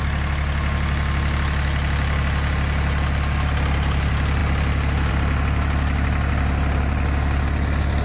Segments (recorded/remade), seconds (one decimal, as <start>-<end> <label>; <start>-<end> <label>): 0.0-8.0 recorded